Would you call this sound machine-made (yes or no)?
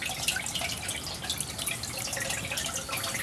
no